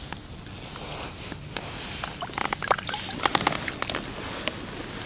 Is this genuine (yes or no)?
yes